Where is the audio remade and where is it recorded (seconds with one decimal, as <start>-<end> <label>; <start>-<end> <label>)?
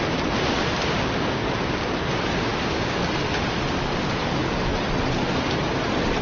0.0-6.2 recorded